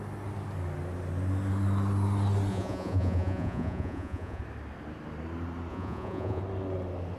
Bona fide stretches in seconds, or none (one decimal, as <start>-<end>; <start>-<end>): 0.0-2.5; 4.4-5.7; 6.4-7.2